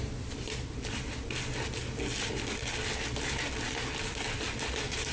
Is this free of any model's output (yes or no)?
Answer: yes